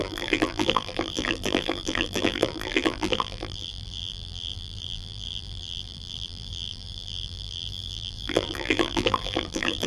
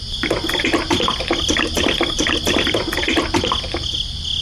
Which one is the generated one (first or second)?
first